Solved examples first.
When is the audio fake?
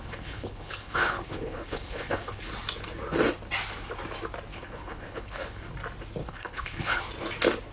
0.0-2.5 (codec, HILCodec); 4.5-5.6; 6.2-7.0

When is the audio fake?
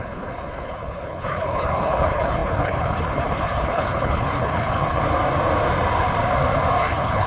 0.0-5.0 (codec, HILCodec); 6.8-7.3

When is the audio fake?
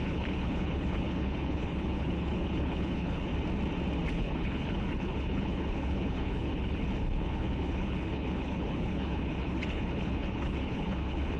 0.0-3.3 (codec, HILCodec); 4.1-11.4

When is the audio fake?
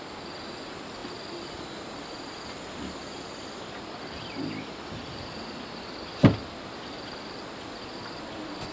none